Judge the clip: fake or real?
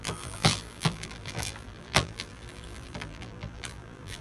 fake